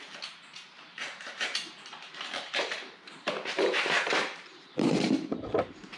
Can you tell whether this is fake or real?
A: fake